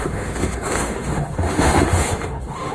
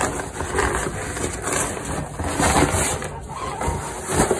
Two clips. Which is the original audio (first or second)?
second